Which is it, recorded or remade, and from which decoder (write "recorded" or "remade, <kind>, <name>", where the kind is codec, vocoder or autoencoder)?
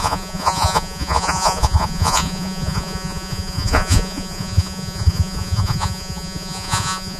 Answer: remade, vocoder, Vocos